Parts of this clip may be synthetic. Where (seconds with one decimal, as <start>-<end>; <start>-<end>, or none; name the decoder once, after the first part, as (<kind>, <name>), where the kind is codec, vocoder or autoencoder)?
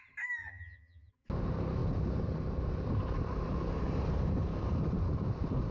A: 0.4-1.1 (vocoder, HiFi-GAN)